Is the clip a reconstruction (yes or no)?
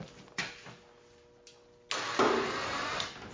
no